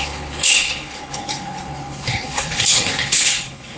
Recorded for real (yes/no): no